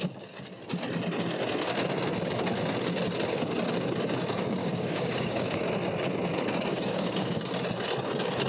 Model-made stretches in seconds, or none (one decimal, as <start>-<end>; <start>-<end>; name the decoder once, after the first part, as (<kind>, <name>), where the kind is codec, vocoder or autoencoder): 4.6-5.4 (codec, DAC); 6.7-7.4